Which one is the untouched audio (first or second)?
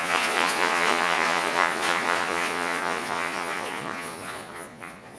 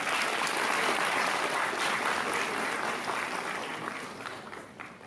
second